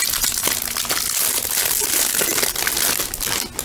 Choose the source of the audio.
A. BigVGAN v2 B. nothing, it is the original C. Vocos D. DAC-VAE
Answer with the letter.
B